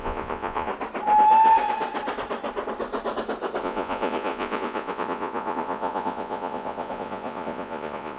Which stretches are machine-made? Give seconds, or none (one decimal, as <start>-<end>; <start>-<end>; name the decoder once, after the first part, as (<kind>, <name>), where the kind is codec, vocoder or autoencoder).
0.0-0.7 (vocoder, Vocos); 3.6-8.2